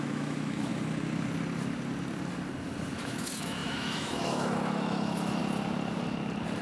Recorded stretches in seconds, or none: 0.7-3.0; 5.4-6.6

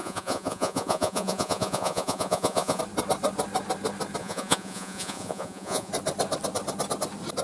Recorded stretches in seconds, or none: 2.8-4.2; 5.9-7.4

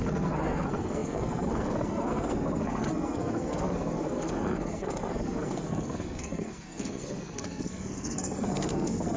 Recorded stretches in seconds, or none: none